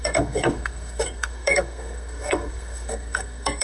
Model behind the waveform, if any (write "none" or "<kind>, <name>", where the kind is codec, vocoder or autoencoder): codec, SNAC